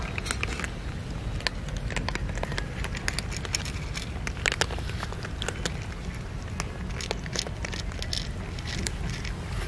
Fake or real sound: real